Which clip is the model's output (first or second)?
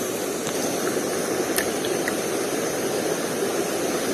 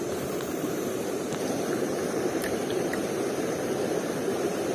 second